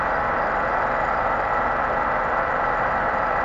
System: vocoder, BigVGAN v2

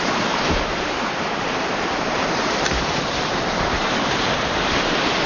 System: vocoder, BigVGAN v2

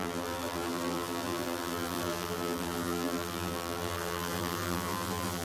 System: vocoder, BigVGAN v2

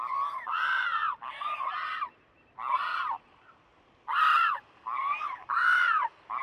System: none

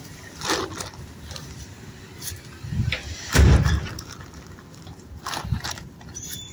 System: vocoder, BigVGAN v2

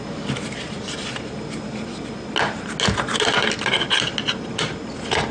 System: none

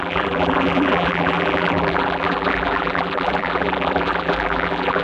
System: vocoder, BigVGAN v2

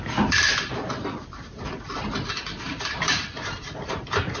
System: vocoder, BigVGAN v2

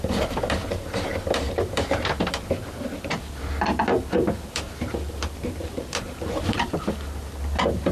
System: vocoder, BigVGAN v2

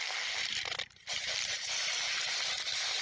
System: vocoder, BigVGAN v2